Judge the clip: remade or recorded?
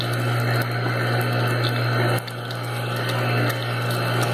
recorded